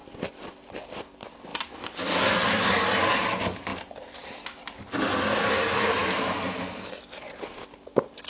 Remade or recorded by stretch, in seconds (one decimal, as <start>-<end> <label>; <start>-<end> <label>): 0.0-8.3 recorded